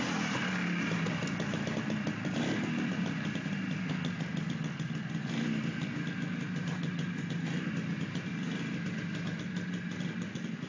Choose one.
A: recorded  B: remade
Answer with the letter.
A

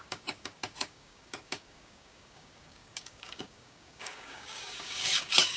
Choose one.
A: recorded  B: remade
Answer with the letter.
B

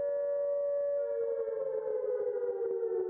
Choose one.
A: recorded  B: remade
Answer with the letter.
A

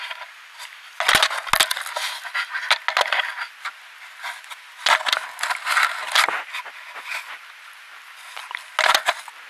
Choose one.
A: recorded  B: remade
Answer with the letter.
A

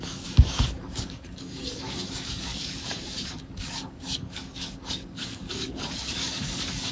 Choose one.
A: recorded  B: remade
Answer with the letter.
B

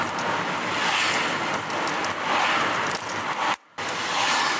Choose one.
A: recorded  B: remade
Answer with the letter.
A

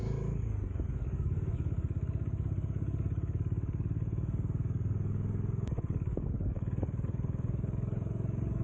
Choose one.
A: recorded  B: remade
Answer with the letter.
B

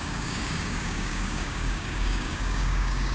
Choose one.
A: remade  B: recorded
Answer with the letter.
A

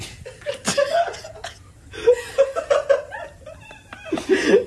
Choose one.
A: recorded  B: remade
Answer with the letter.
A